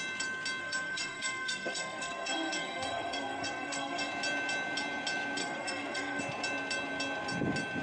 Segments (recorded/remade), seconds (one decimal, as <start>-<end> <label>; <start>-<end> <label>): 0.0-0.6 recorded; 0.6-4.1 remade; 4.1-5.4 recorded; 5.4-6.2 remade; 6.2-7.8 recorded